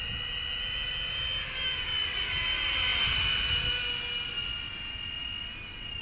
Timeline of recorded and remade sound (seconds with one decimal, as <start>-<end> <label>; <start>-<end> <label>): 0.0-6.0 recorded